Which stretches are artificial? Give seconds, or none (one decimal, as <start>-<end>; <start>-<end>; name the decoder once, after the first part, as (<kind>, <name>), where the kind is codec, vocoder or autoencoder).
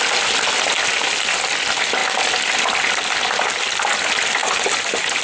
4.4-5.2 (vocoder, BigVGAN v2)